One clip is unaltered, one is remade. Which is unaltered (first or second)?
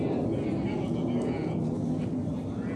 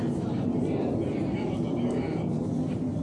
first